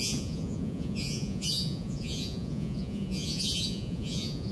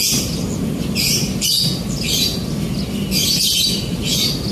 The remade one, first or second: first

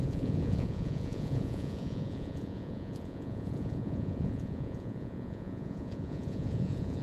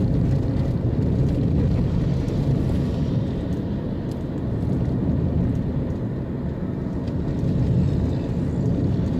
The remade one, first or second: first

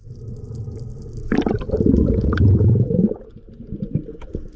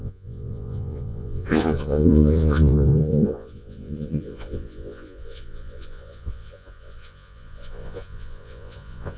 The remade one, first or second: second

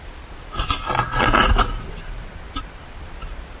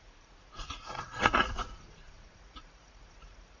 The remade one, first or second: second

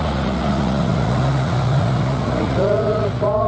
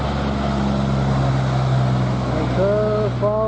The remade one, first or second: first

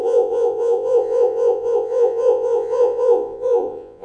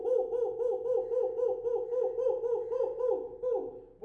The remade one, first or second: first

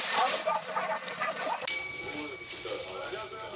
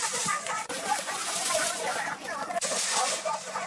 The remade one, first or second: second